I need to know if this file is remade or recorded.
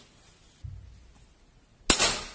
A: recorded